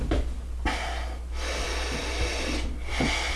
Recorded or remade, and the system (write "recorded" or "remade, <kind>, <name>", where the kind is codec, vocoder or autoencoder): recorded